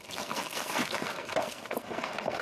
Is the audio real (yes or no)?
no